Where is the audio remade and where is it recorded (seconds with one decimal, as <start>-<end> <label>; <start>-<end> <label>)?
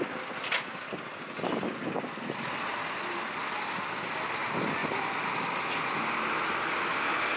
0.0-7.4 recorded